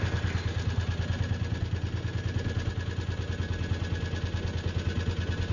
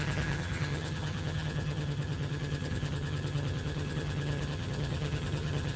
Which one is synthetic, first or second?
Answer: second